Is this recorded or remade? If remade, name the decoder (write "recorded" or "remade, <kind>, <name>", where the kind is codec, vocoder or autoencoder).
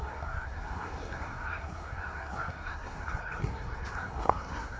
remade, codec, SNAC